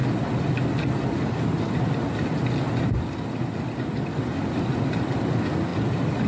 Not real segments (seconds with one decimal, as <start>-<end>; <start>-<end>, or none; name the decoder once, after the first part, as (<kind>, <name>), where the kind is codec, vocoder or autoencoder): none